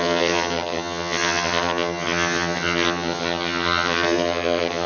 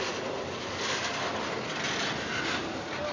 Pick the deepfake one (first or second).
first